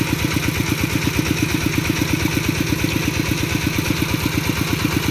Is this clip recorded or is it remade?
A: recorded